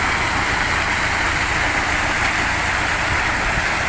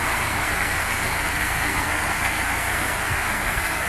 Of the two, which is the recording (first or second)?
first